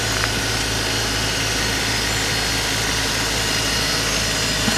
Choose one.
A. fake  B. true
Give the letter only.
B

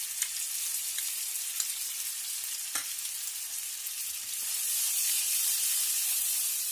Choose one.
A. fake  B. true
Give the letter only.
B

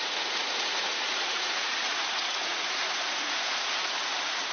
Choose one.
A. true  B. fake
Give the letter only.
B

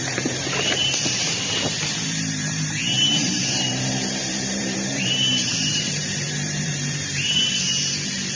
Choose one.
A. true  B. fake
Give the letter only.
B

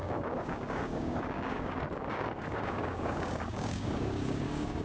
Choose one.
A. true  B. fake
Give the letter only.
B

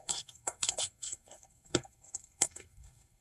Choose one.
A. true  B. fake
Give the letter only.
B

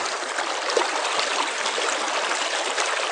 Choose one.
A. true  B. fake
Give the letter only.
A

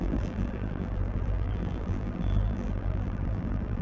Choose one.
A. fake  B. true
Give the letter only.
A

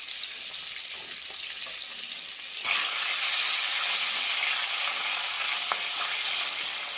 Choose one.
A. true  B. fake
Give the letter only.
A